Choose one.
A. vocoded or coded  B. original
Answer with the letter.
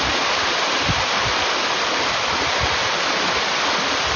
B